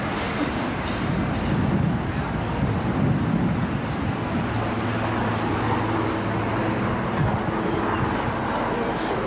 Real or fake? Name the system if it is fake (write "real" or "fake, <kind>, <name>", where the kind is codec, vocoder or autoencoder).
real